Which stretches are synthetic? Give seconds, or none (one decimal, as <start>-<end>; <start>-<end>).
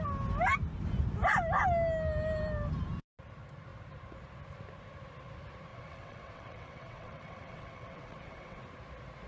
5.7-8.6